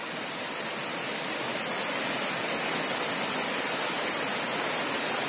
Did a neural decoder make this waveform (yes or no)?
no